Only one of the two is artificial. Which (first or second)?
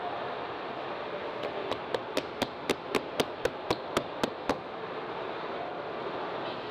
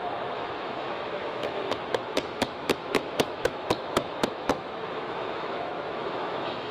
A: second